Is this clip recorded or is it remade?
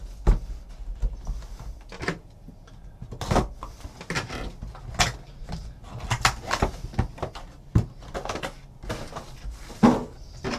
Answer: recorded